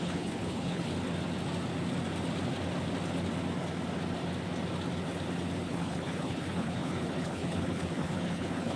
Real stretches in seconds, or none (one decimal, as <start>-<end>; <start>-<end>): 0.9-5.7

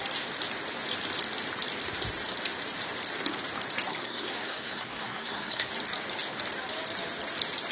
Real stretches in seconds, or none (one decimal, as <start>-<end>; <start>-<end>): 0.0-3.9; 5.7-7.7

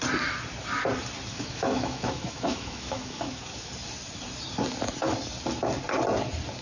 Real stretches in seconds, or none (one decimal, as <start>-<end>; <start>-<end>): 0.0-1.3; 3.7-6.6

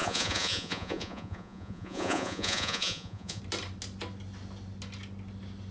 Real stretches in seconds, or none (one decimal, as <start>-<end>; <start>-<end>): 3.4-5.7

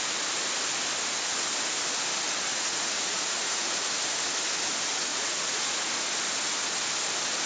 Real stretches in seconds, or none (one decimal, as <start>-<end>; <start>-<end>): 0.0-2.5; 3.8-5.1; 6.1-7.5

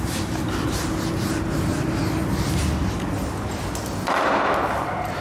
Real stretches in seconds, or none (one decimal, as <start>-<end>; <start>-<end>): 1.7-4.6